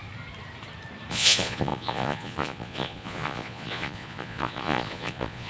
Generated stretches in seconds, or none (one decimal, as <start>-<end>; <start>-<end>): 1.1-5.5